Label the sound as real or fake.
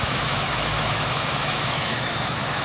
fake